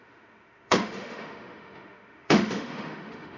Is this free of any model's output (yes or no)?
no